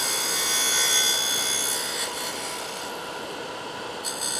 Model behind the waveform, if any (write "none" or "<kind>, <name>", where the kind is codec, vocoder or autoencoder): none